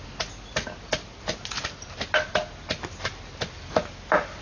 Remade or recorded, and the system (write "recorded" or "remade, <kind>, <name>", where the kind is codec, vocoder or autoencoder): recorded